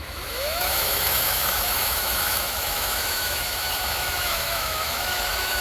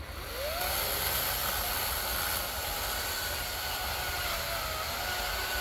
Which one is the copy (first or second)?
first